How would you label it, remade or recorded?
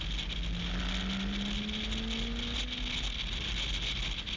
recorded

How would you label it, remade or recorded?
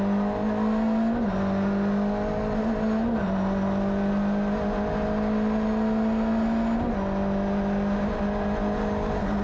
recorded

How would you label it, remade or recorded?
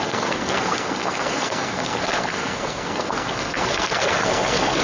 remade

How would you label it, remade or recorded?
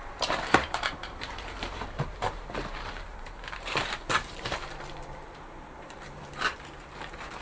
remade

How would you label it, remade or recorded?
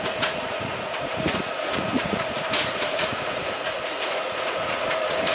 remade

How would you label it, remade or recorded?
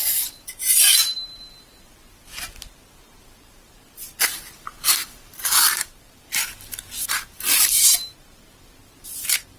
remade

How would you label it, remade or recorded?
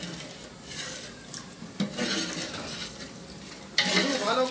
recorded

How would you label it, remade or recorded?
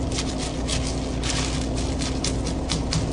recorded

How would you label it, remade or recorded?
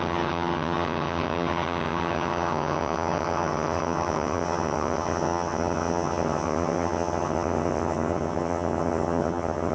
remade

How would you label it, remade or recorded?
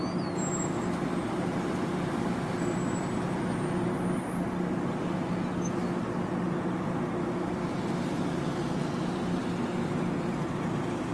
recorded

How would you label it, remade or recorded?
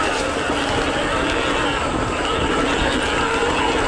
recorded